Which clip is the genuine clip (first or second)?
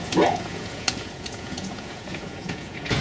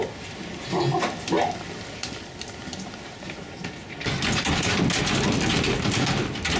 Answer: second